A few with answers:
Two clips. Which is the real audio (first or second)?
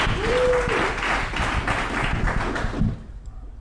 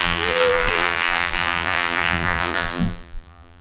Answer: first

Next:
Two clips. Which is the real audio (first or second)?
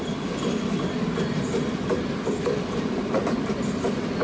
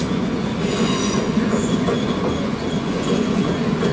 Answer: first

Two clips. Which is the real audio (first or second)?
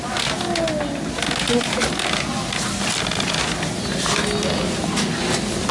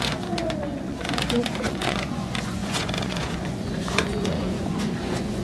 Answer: first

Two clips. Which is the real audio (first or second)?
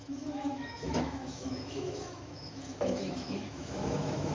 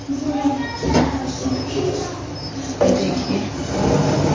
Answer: second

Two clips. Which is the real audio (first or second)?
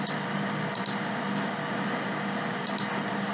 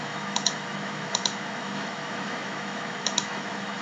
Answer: first